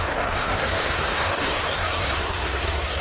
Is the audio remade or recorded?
remade